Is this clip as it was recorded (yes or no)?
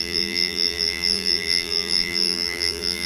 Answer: no